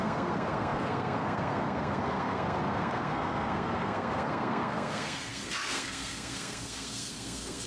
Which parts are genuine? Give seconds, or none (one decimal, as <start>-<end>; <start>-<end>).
none